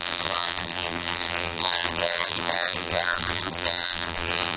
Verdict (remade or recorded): remade